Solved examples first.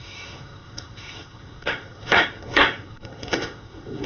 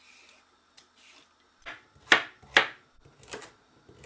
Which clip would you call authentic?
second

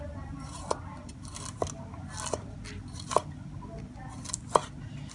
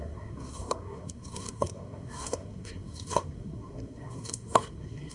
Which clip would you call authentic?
first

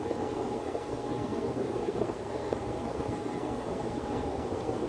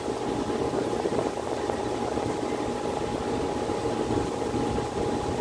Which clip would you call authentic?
second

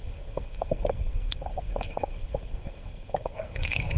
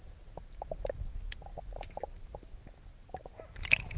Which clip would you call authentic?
second